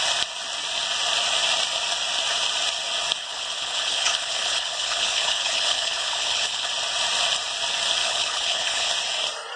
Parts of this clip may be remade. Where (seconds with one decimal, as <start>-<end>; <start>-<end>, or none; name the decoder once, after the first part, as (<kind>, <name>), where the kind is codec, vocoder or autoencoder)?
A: 3.2-6.7 (codec, HILCodec); 8.0-8.9